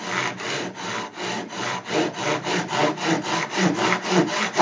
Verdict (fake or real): real